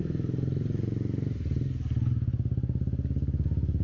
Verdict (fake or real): real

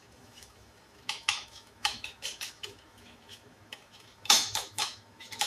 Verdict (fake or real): fake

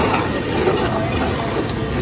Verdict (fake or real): real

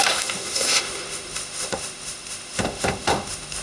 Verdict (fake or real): fake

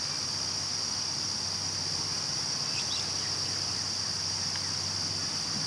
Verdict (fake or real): real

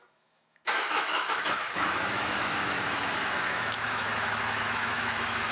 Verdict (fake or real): fake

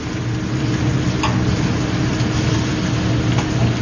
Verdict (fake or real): real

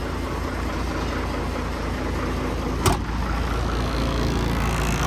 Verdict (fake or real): real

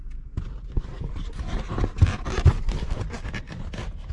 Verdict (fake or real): real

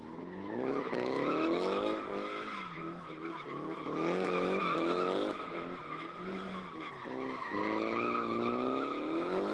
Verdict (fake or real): fake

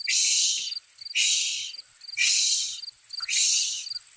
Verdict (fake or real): real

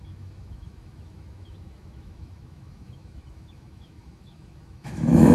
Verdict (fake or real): fake